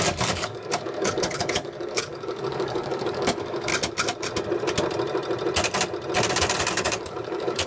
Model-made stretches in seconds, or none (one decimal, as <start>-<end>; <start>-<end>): 0.0-3.7; 6.6-7.7